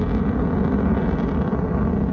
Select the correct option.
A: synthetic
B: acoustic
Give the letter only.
B